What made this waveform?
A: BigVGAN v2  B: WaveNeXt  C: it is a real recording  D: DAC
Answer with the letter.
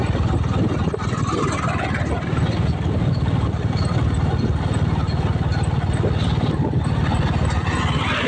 C